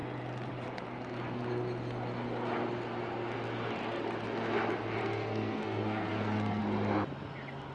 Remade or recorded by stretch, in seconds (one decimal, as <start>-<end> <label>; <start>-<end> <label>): 0.0-5.0 recorded; 5.0-6.6 remade; 6.6-7.7 recorded